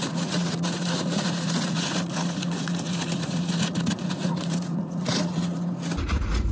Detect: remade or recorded remade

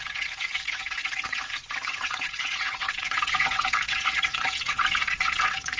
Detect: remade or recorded remade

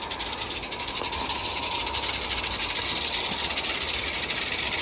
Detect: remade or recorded recorded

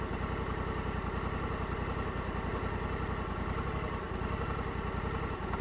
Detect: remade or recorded recorded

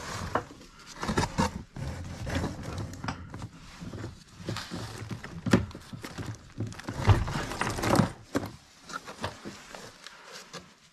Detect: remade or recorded recorded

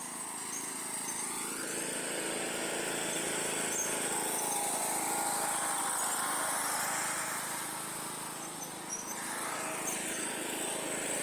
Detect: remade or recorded recorded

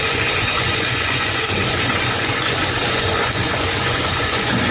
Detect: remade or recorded remade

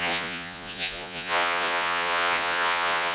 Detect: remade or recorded remade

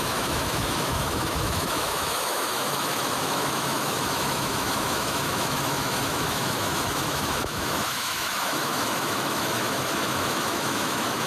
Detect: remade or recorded remade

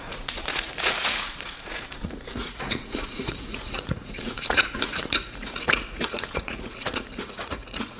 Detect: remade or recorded remade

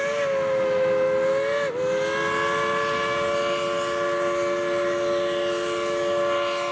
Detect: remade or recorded recorded